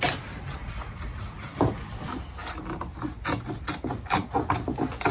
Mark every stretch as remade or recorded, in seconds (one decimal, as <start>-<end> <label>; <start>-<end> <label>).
0.0-0.6 recorded; 0.6-1.3 remade; 1.3-5.1 recorded

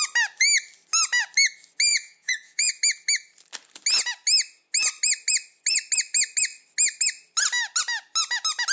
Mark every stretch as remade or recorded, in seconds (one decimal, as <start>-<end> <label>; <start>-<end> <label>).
0.0-1.9 recorded; 1.9-2.7 remade; 2.7-8.7 recorded

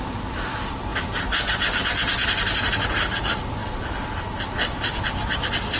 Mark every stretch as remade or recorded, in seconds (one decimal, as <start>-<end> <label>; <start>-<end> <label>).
0.0-5.8 recorded

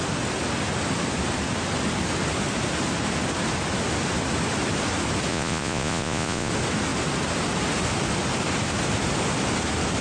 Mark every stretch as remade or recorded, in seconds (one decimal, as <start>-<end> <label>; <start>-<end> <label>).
0.0-5.3 recorded; 5.3-6.5 remade; 6.5-10.0 recorded

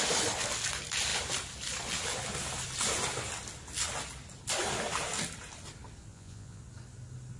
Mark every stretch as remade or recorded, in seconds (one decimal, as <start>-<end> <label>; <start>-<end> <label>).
0.0-6.1 recorded; 6.1-6.6 remade; 6.6-7.4 recorded

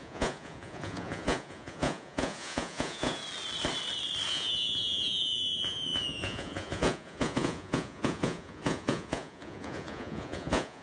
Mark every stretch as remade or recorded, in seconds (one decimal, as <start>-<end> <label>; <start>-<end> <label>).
0.0-3.2 remade; 3.2-4.3 recorded; 4.3-10.8 remade